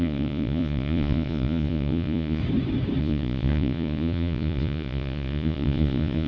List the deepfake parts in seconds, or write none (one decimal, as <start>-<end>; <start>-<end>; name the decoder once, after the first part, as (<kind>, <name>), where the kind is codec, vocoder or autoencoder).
0.0-2.4 (vocoder, Vocos); 3.0-6.3